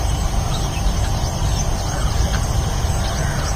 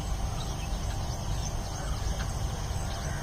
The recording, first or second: second